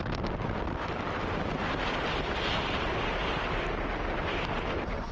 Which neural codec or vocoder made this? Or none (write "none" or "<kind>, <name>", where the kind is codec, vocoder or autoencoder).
none